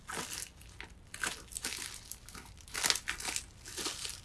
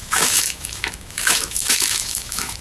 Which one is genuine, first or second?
first